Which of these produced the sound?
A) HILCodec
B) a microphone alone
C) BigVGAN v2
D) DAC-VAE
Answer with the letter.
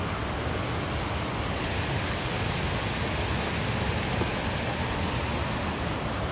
B